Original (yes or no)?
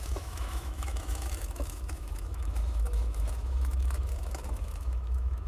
no